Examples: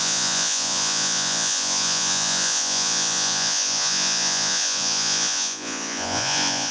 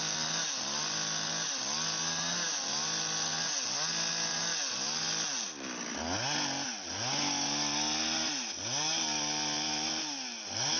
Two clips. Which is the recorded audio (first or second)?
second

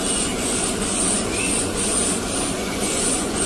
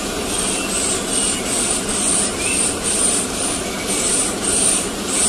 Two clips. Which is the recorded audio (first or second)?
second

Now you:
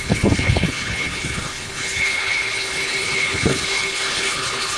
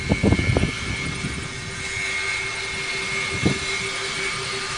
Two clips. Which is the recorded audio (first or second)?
second